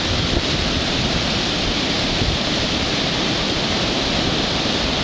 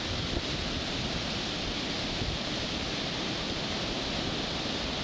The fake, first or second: first